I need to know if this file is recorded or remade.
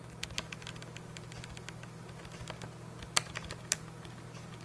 recorded